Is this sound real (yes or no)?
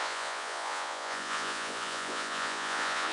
no